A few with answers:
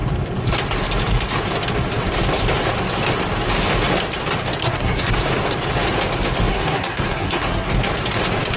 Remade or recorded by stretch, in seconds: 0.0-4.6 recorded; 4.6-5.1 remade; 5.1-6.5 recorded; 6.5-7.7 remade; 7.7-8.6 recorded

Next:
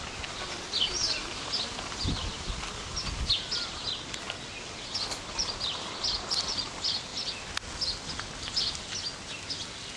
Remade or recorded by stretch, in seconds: 0.0-10.0 recorded